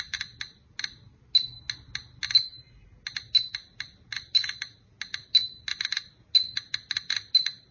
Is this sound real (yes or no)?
yes